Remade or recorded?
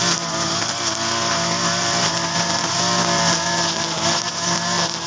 recorded